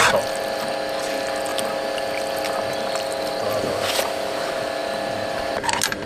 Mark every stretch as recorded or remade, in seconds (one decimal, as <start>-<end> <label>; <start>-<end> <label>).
0.0-6.1 recorded